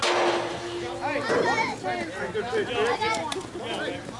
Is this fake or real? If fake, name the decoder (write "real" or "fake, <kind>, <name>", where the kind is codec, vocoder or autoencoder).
real